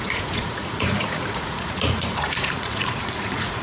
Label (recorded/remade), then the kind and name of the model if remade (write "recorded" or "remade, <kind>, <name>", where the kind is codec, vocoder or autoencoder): remade, vocoder, Vocos